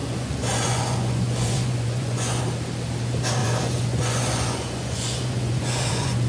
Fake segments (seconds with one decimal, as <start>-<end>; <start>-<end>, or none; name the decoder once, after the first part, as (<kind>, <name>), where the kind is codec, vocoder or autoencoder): 0.0-2.4 (vocoder, Vocos); 3.4-6.3